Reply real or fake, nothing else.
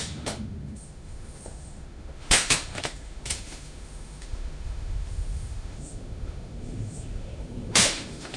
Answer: fake